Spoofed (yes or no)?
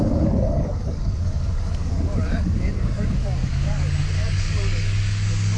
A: yes